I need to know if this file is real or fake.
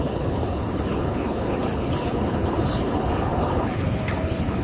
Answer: fake